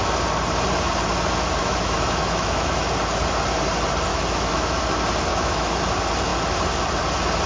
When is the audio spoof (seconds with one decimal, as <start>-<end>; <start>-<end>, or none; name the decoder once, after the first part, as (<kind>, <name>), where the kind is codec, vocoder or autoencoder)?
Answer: 1.6-2.9 (autoencoder, DAC-VAE); 4.1-4.8; 5.3-5.8